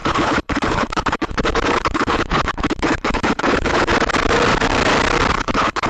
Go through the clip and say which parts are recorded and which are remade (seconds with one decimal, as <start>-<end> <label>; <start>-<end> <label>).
0.0-3.9 remade; 3.9-5.3 recorded; 5.3-5.9 remade